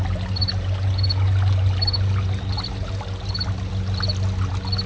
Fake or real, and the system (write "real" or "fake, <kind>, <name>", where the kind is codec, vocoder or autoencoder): real